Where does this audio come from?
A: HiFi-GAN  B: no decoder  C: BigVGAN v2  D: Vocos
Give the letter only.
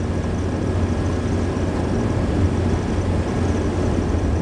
B